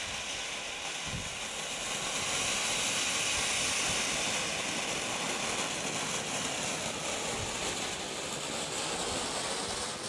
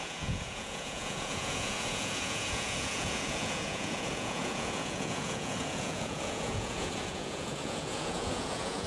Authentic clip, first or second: first